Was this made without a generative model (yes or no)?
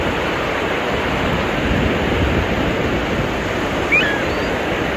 yes